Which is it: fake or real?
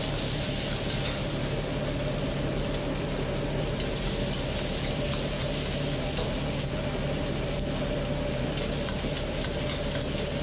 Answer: real